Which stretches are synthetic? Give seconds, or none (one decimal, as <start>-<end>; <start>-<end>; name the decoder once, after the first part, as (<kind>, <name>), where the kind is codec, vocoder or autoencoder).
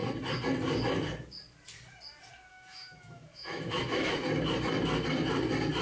2.5-4.1 (autoencoder, DAC-VAE)